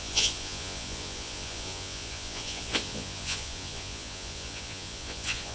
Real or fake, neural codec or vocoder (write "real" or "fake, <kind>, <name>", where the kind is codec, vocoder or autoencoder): fake, vocoder, Vocos